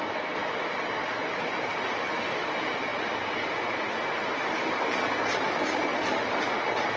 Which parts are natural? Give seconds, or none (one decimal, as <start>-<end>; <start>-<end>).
0.0-7.0

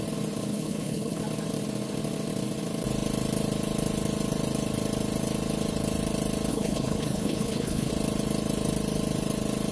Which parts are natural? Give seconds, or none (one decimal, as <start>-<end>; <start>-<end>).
0.0-0.5; 1.2-6.5; 7.9-9.7

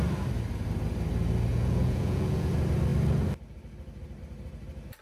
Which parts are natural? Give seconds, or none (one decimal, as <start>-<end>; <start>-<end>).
0.0-1.5; 2.5-5.0

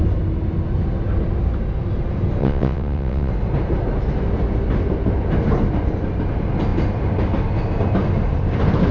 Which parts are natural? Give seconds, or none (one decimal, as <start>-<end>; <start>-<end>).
0.0-2.4; 3.3-8.9

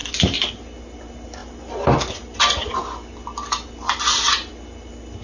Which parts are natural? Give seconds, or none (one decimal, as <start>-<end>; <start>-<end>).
0.0-5.2

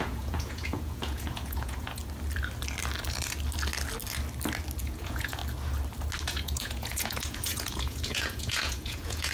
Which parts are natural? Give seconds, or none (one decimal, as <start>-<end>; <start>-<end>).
2.0-4.8; 5.4-6.2

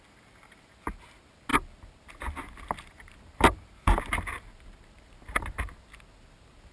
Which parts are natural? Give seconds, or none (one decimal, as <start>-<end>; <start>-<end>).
0.0-6.7

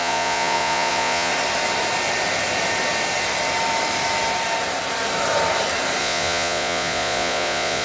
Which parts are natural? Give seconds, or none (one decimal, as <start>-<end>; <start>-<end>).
1.3-6.0